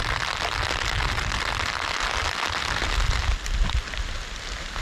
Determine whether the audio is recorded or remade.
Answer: recorded